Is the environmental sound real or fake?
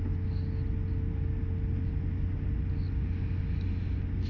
real